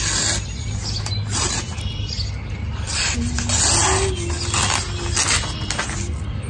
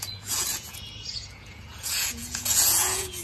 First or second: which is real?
first